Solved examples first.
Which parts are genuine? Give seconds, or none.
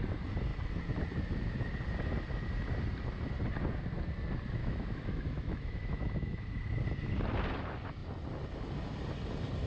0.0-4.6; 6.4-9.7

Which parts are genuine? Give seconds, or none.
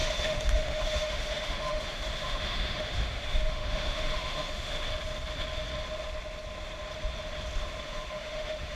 4.9-7.8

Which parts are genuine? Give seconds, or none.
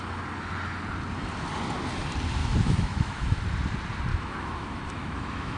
0.0-2.4; 3.4-4.1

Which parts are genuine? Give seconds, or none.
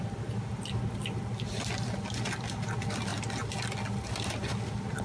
0.0-5.0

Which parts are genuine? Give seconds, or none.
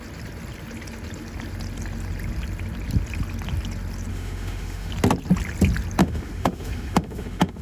0.0-4.1; 4.9-6.0